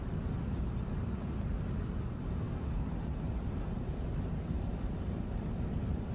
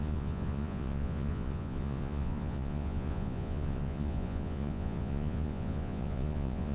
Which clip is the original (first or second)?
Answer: first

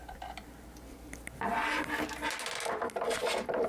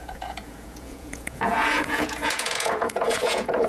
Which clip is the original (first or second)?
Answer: first